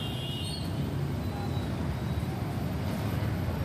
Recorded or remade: recorded